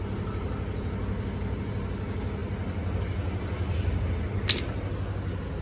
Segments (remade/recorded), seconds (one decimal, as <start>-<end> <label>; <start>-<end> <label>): 0.0-5.6 recorded